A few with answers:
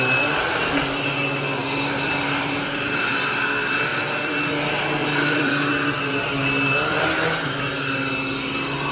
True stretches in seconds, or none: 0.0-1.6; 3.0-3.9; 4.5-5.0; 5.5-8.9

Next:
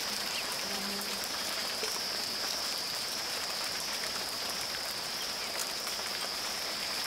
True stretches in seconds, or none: none